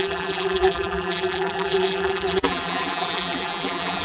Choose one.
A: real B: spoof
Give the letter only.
B